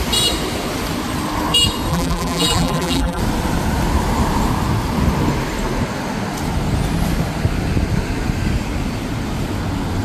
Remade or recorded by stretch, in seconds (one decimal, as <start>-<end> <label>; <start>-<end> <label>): 0.0-1.9 recorded; 1.9-3.2 remade; 3.2-10.0 recorded